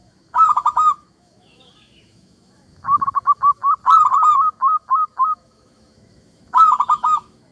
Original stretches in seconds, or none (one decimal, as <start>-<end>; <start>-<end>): 3.6-4.3